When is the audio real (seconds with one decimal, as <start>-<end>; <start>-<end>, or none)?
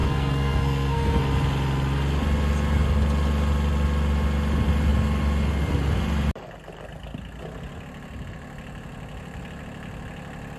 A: 1.2-10.6